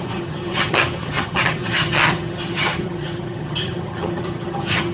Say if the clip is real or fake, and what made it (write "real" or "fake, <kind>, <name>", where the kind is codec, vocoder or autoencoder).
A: fake, vocoder, HiFi-GAN